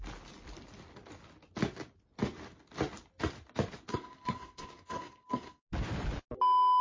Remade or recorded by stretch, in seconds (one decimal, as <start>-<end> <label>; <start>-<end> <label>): 0.0-3.9 recorded; 3.9-5.6 remade; 5.6-6.8 recorded